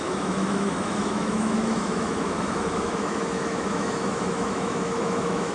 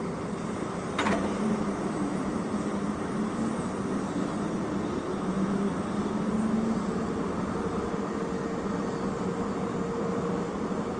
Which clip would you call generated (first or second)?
first